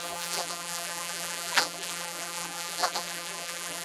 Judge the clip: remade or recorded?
remade